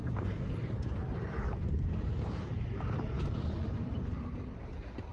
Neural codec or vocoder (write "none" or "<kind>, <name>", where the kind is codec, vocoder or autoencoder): vocoder, BigVGAN v2